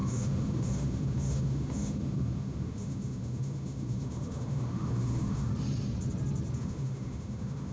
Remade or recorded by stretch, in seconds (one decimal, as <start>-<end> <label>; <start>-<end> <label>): 0.0-5.5 remade; 5.5-6.6 recorded; 6.6-7.7 remade